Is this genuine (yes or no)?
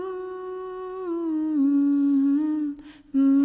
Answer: yes